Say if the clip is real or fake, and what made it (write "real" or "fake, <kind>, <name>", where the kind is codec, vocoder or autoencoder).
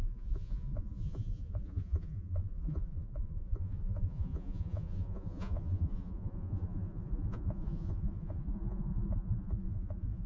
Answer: fake, vocoder, Vocos